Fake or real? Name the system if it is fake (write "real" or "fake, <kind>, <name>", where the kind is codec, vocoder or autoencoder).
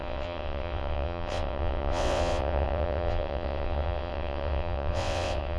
fake, vocoder, WaveNeXt